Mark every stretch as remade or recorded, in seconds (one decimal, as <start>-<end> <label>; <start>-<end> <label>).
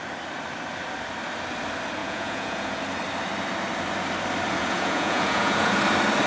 0.0-2.0 recorded; 2.0-2.8 remade; 2.8-4.6 recorded; 4.6-5.7 remade; 5.7-6.3 recorded